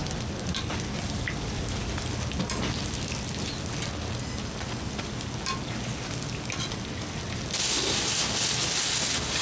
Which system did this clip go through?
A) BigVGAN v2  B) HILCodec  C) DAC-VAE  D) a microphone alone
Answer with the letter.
D